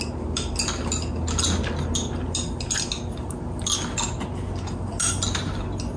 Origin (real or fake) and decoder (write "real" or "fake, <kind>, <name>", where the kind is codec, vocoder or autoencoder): real